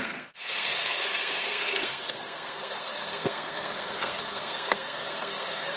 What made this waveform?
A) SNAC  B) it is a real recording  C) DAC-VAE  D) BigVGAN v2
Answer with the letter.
A